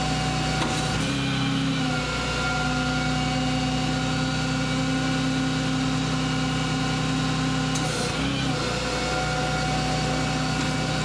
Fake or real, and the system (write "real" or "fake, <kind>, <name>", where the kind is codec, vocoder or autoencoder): real